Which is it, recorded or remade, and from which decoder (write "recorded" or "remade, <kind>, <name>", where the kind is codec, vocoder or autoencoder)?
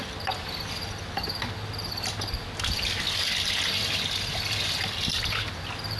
recorded